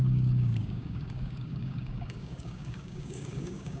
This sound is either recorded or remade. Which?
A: remade